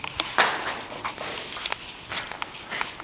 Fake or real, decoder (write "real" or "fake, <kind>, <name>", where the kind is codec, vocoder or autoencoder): real